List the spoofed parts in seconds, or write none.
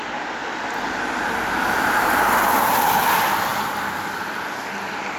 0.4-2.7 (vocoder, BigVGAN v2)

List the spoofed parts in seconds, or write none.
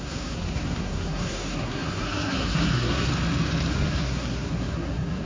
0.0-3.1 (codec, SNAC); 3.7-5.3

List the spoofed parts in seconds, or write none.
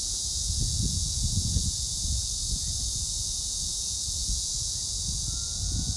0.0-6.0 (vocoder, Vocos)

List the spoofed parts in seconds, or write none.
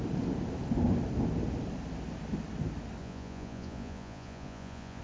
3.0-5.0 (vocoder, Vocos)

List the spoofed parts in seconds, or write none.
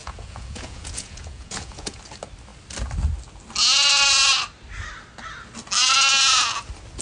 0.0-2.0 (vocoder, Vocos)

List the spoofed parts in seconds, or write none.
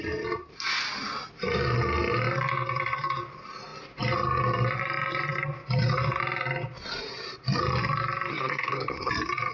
8.3-9.1 (codec, SNAC)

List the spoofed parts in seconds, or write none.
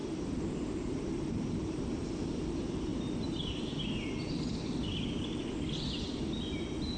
0.0-2.9 (vocoder, BigVGAN v2)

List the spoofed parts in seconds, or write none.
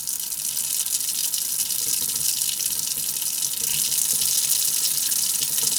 1.2-3.0 (vocoder, BigVGAN v2)